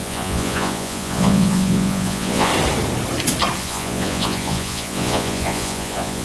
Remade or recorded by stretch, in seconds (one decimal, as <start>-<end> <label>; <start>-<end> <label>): 0.0-2.5 remade; 2.5-3.6 recorded; 3.6-6.2 remade

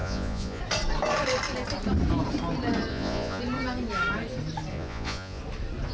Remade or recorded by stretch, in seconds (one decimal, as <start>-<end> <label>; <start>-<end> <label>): 0.0-0.6 remade; 0.6-2.9 recorded; 2.9-3.4 remade; 3.4-4.7 recorded; 4.7-5.4 remade; 5.4-5.9 recorded

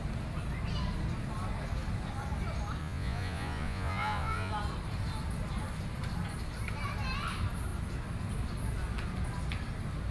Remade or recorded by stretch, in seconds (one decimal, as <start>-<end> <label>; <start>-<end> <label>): 0.0-2.8 recorded; 2.8-4.5 remade; 4.5-10.1 recorded

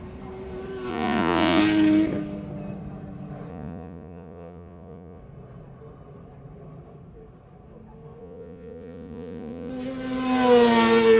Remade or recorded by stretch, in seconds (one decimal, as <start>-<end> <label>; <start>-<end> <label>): 0.0-0.9 recorded; 0.9-1.6 remade; 1.6-3.5 recorded; 3.5-5.2 remade; 5.2-8.2 recorded; 8.2-9.7 remade; 9.7-11.2 recorded

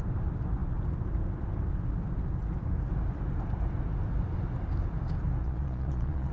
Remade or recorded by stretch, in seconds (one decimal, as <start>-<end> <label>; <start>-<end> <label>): 0.0-5.4 recorded; 5.4-6.3 remade

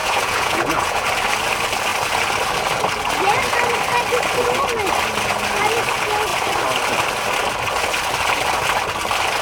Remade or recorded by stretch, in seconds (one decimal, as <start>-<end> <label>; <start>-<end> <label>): 0.0-1.0 remade; 1.0-9.4 recorded